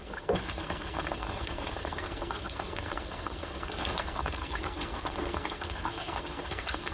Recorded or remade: remade